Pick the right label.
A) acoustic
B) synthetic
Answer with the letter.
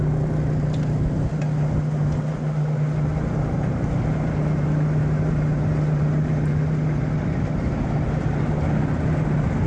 A